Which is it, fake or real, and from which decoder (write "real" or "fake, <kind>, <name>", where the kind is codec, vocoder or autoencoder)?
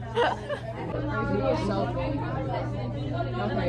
real